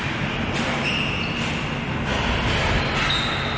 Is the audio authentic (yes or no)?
yes